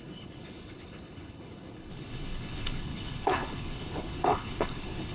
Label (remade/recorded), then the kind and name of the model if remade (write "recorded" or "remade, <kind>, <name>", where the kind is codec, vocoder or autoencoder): remade, codec, HILCodec